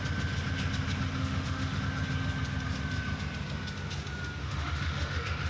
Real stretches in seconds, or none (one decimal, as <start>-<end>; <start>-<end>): 0.0-1.2; 1.8-4.4